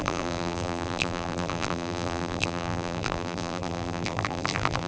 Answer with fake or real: fake